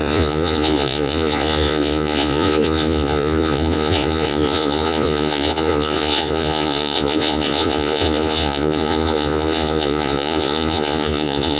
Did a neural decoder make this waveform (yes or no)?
yes